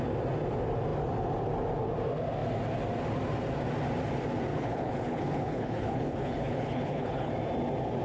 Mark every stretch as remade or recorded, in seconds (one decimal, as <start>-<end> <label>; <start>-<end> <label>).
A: 0.0-4.5 recorded; 4.5-7.3 remade; 7.3-8.0 recorded

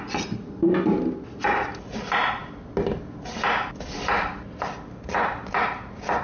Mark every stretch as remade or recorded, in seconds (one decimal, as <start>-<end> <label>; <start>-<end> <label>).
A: 0.0-6.2 recorded

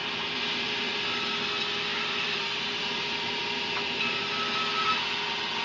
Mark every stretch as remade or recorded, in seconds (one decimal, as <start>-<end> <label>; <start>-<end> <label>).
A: 0.0-1.0 remade; 1.0-1.9 recorded; 1.9-4.3 remade; 4.3-5.6 recorded

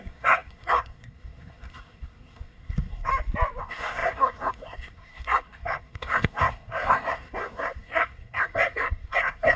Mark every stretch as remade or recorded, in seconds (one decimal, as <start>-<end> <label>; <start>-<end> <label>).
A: 0.0-3.1 remade; 3.1-3.6 recorded; 3.6-9.6 remade